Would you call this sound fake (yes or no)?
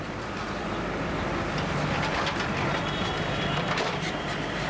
yes